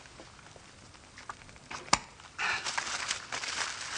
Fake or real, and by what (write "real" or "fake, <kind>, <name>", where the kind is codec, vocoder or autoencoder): real